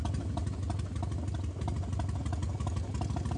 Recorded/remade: recorded